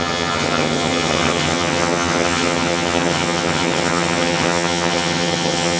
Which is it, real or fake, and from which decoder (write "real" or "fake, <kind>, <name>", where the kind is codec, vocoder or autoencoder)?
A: fake, vocoder, HiFi-GAN